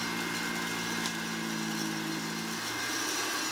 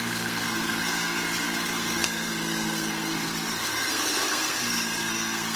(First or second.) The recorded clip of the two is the first